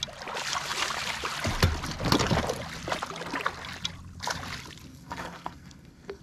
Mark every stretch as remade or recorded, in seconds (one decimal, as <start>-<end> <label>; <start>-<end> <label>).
0.0-4.9 recorded; 4.9-6.2 remade